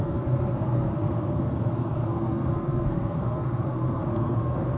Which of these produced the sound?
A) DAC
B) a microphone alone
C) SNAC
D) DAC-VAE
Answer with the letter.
C